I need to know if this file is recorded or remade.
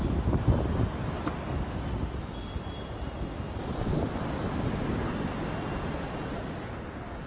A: recorded